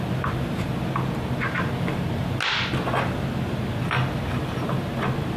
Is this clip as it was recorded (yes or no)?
yes